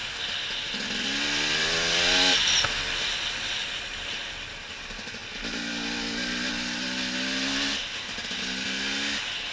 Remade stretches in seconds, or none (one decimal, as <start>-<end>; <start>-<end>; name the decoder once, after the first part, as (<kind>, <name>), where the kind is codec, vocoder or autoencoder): none